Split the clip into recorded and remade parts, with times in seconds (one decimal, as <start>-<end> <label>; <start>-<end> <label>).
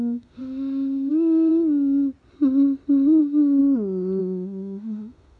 0.0-1.5 remade; 1.5-3.2 recorded; 3.2-3.6 remade; 3.6-4.2 recorded; 4.2-5.4 remade